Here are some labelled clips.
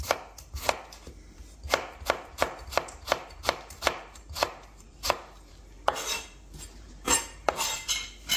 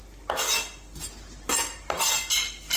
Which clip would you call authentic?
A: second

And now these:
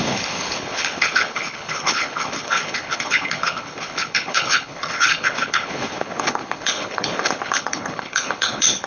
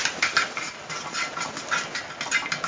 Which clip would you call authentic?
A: second